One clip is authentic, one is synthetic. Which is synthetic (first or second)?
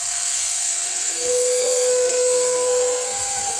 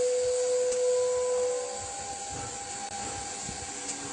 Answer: first